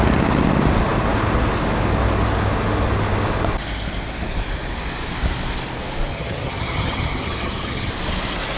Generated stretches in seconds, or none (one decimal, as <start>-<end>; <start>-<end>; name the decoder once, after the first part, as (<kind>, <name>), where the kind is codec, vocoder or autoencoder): 6.1-7.9 (vocoder, HiFi-GAN)